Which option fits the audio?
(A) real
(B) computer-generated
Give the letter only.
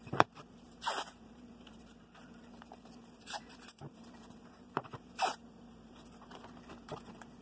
B